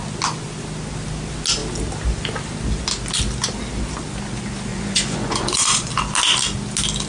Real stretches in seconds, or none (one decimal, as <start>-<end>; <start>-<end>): 0.0-4.7; 5.9-7.1